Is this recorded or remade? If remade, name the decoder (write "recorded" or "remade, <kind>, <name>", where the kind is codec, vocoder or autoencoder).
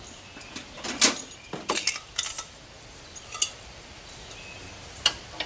recorded